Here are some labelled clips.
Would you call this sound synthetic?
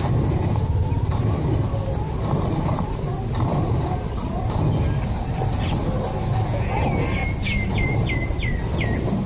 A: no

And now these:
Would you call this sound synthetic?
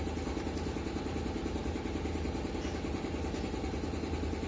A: no